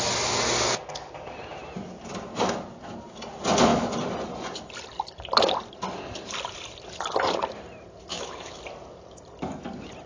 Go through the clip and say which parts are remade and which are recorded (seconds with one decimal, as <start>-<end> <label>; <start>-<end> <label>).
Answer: 0.0-8.1 recorded; 8.1-8.6 remade; 8.6-10.1 recorded